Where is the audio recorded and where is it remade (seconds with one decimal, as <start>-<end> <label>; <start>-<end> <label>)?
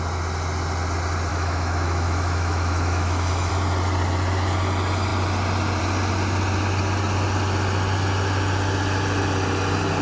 0.0-1.3 recorded; 1.3-3.5 remade; 3.5-10.0 recorded